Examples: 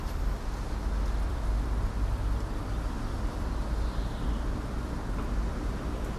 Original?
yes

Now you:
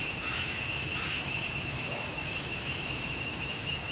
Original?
no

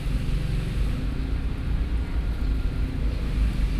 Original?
yes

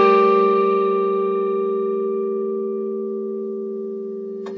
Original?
no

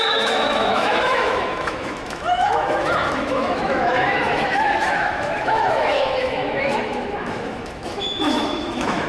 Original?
no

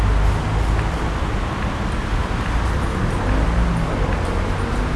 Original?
yes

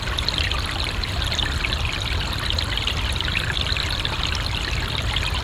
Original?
yes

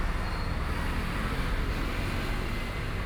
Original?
yes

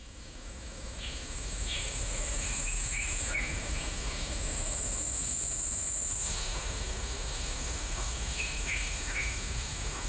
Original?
no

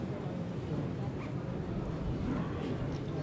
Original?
yes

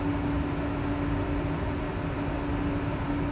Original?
yes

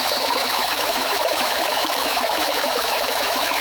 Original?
no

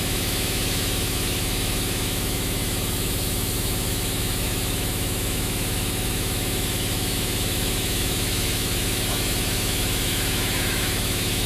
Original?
no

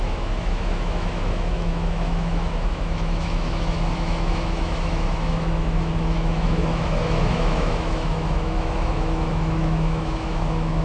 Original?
no